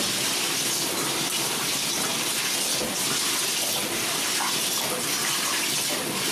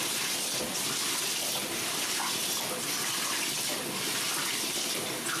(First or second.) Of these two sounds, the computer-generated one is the second